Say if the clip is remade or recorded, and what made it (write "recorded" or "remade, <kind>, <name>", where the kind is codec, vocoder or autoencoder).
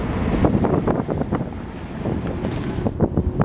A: recorded